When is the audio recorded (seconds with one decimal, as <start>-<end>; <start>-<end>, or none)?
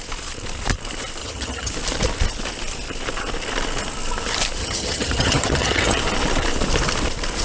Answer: 0.0-1.2; 1.7-4.6; 6.0-7.4